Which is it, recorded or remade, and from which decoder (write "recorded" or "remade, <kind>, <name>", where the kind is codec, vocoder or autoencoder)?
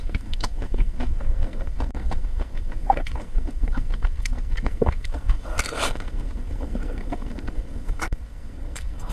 remade, codec, SNAC